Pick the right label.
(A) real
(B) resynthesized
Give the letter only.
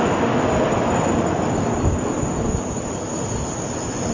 A